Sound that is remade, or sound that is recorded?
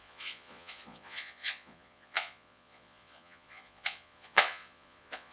remade